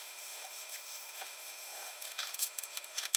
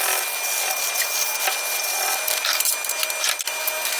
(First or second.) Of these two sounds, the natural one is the second